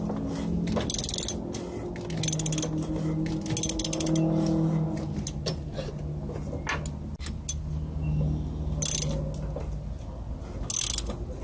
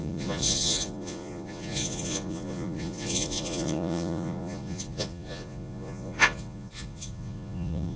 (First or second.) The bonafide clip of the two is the first